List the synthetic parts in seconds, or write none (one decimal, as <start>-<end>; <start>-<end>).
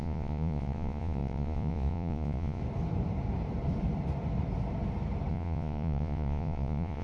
0.0-2.6; 5.3-7.0